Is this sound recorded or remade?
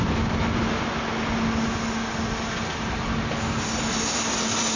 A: recorded